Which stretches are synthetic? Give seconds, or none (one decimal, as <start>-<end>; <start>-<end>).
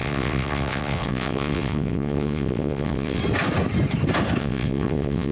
0.0-3.2; 4.4-5.3